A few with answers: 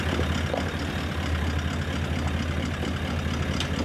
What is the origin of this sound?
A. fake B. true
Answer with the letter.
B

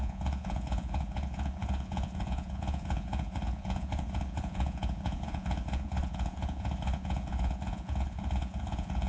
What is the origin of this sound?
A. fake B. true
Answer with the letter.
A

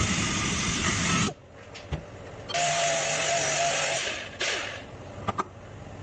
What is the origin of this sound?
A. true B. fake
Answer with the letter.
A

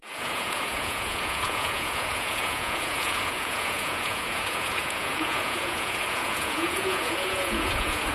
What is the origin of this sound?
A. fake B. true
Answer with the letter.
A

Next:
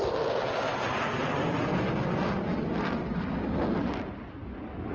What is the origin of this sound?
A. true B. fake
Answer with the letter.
A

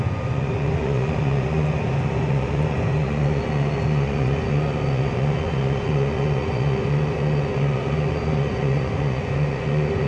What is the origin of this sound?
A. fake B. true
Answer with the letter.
A